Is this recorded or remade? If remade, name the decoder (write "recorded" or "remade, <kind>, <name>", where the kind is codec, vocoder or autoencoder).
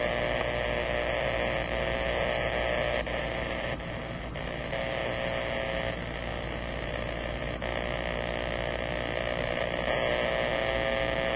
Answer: recorded